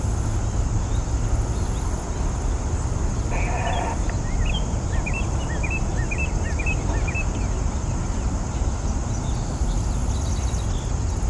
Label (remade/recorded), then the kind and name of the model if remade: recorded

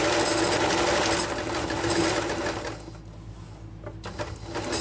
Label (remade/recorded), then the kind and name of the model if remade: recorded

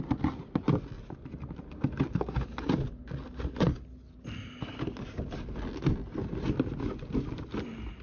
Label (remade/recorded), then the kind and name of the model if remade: recorded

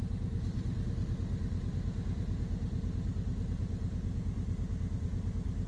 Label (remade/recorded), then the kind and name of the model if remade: recorded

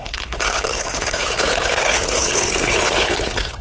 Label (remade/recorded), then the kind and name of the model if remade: remade, codec, HILCodec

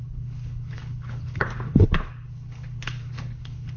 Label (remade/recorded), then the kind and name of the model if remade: remade, codec, HILCodec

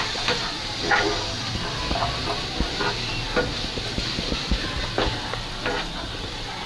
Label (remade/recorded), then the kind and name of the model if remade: recorded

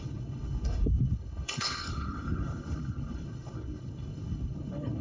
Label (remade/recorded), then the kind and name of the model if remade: remade, codec, HILCodec